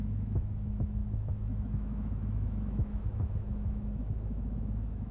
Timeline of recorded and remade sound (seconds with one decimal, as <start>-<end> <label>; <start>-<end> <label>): 0.0-5.1 remade